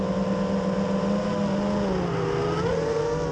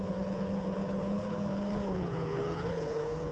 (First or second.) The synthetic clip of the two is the second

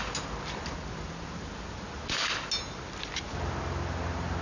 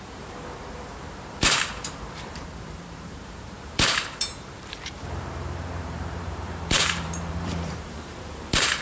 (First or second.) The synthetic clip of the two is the second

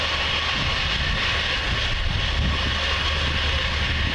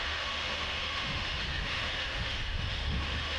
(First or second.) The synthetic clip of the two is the second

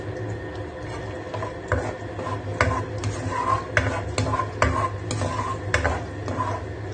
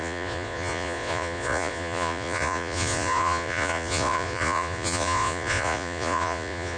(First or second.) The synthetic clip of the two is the second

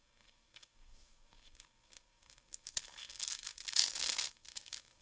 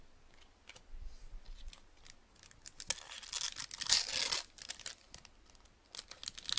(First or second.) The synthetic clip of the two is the first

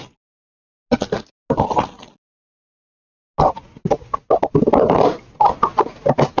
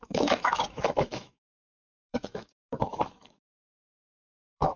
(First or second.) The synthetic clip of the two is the second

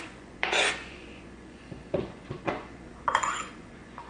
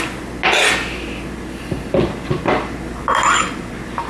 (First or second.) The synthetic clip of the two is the first